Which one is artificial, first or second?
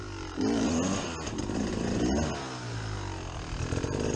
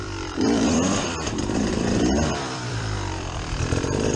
second